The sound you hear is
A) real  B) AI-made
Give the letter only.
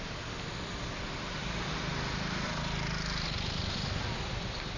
A